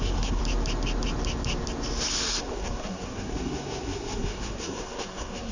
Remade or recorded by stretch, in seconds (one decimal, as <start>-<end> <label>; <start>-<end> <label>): 0.0-0.4 remade; 0.4-2.4 recorded; 2.4-5.5 remade